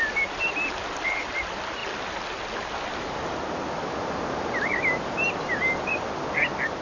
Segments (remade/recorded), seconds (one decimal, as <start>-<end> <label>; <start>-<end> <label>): 0.0-6.8 recorded

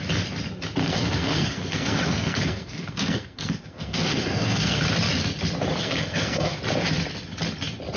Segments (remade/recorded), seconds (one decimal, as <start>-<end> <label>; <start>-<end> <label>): 0.0-0.8 recorded; 0.8-4.8 remade; 4.8-5.8 recorded; 5.8-6.6 remade; 6.6-8.0 recorded

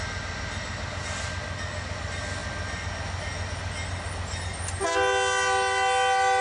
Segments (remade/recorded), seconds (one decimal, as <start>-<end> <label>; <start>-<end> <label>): 0.0-6.4 recorded

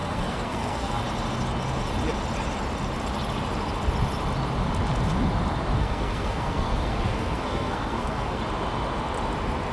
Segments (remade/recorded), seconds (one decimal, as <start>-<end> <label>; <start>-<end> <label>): 0.0-1.0 remade; 1.0-5.8 recorded; 5.8-8.4 remade; 8.4-9.7 recorded

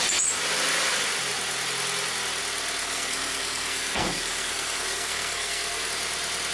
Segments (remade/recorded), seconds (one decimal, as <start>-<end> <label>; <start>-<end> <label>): 0.0-2.8 recorded; 2.8-5.9 remade; 5.9-6.5 recorded

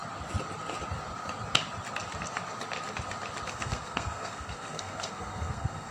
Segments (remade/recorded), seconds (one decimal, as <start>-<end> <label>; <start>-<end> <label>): 0.0-3.5 recorded; 3.5-5.9 remade